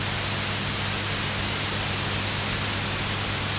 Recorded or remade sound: remade